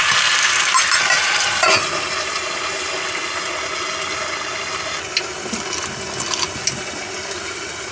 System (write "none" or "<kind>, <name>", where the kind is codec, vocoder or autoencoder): none